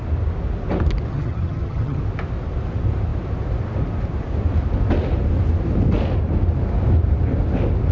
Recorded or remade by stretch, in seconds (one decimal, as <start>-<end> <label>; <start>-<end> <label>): 0.0-1.1 recorded; 1.1-2.0 remade; 2.0-7.9 recorded